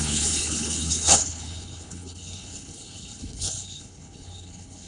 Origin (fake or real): fake